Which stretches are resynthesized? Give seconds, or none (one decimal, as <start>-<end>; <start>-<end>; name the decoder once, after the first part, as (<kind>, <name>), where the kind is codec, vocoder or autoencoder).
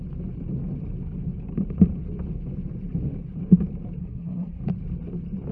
4.0-4.6 (codec, SNAC)